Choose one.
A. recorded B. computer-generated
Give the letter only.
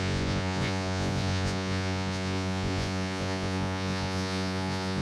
B